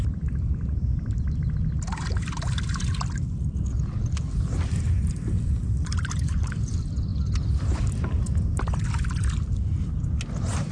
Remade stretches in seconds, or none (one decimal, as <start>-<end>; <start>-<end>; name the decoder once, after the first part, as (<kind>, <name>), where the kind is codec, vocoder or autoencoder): none